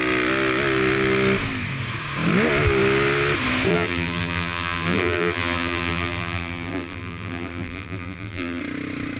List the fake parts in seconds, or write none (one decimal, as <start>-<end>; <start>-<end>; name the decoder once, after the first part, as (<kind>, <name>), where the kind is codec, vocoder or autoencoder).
3.7-8.6 (vocoder, BigVGAN v2)